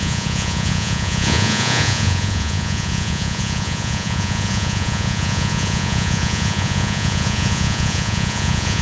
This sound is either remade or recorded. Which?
remade